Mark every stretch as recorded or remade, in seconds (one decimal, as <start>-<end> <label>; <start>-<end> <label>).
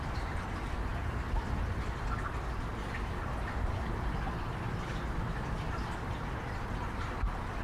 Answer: 0.0-7.6 recorded